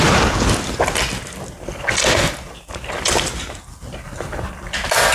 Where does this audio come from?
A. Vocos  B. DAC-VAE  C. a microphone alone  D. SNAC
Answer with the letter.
C